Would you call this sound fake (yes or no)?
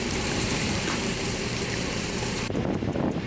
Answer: yes